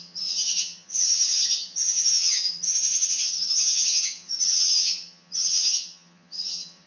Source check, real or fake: fake